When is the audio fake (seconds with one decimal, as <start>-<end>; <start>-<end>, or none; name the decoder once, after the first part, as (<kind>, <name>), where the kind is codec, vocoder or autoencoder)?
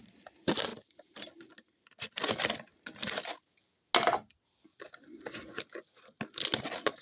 0.7-2.0 (vocoder, BigVGAN v2)